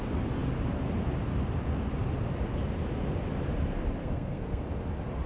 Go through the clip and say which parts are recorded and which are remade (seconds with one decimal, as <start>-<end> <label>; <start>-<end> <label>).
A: 0.0-4.0 recorded; 4.0-4.6 remade; 4.6-5.3 recorded